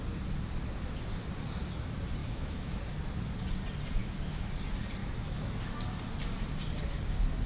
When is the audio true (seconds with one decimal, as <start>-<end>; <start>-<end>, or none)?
0.0-2.2; 2.8-4.0; 4.5-5.0; 5.7-7.5